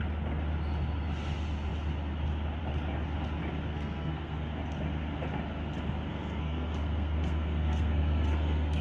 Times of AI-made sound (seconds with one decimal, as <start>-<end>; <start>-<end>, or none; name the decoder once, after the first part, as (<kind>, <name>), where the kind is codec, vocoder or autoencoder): 3.7-4.4 (codec, SNAC); 6.1-8.8